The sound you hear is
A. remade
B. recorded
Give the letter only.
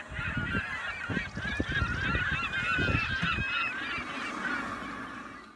B